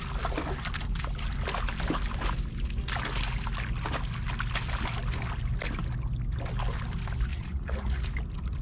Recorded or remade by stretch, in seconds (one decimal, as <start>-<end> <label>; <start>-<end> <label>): 0.0-7.3 recorded; 7.3-8.0 remade; 8.0-8.6 recorded